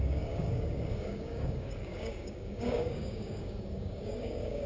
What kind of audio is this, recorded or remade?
remade